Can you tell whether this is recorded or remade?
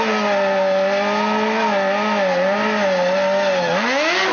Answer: recorded